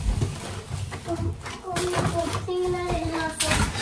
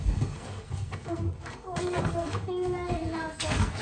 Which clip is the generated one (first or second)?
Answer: second